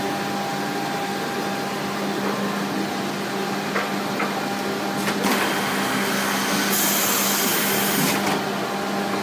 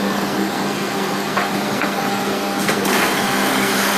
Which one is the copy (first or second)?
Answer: second